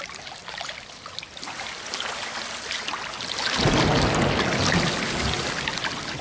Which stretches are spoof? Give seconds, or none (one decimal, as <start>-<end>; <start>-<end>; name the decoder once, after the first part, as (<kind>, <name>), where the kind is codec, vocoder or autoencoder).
none